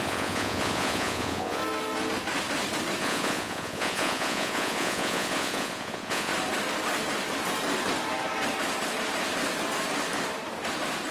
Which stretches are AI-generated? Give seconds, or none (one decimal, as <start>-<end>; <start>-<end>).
0.0-1.6; 3.0-6.3